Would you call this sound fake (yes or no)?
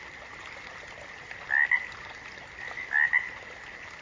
no